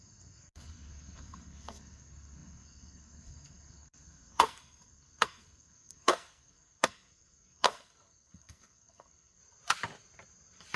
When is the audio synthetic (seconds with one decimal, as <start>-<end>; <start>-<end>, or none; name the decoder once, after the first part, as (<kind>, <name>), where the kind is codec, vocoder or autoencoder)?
0.0-9.4 (codec, SNAC)

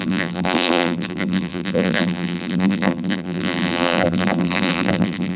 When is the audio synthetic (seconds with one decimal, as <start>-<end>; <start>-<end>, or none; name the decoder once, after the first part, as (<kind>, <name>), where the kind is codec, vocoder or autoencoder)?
0.0-5.4 (vocoder, BigVGAN v2)

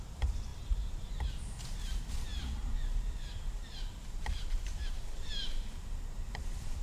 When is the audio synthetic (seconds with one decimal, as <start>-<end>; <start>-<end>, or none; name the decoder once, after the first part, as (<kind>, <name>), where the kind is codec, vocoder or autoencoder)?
0.0-6.8 (vocoder, BigVGAN v2)

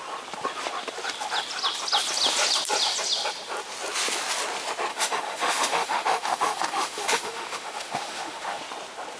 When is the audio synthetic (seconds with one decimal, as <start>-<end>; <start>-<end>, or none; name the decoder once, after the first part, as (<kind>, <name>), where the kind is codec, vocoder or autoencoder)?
4.9-8.6 (autoencoder, DAC-VAE)

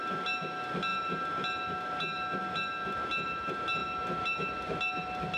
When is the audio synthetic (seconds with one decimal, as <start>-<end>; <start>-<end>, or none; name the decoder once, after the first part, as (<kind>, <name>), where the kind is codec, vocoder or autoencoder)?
none

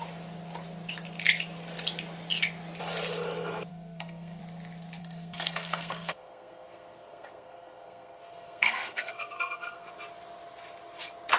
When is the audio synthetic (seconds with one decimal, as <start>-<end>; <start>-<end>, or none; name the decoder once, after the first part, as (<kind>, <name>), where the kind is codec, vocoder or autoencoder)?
3.7-4.4 (codec, SNAC); 5.0-9.9

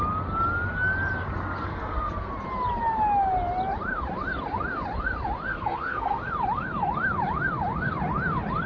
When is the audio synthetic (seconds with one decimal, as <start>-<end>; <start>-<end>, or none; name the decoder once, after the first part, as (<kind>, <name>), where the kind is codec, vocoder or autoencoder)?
1.7-2.3 (codec, SNAC); 5.5-6.2